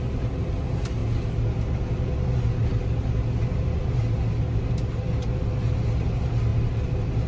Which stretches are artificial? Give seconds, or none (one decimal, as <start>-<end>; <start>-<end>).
none